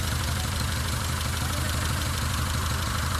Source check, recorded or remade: remade